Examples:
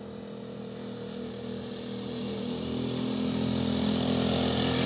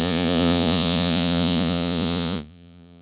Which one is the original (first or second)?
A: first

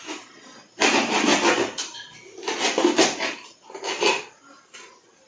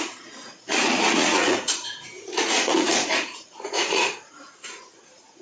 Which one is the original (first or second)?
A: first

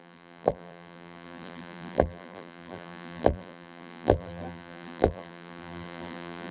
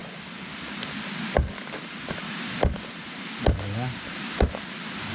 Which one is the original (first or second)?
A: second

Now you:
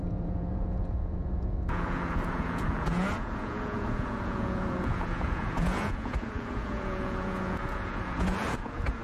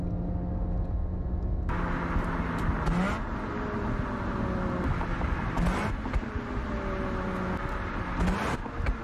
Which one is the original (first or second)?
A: second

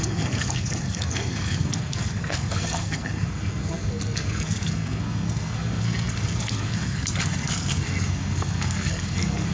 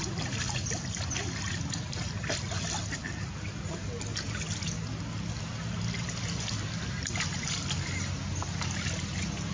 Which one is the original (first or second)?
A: second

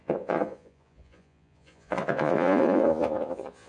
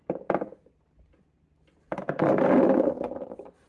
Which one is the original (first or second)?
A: second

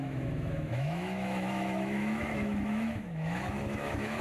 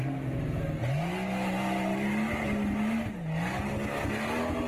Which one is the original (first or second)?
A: second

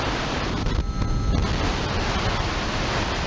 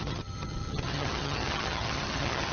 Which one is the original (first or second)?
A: first